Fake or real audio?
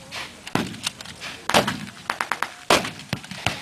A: real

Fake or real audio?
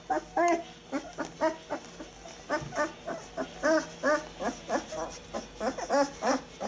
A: real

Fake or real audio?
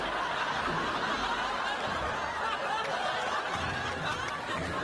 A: real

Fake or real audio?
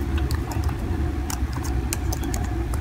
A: real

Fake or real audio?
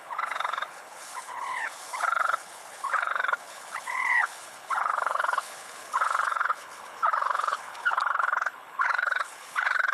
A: fake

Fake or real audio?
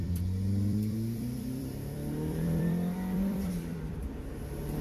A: fake